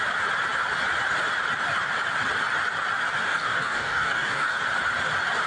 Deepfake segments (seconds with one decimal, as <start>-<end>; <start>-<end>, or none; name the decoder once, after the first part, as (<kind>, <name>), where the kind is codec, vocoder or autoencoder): 3.2-4.6 (codec, DAC)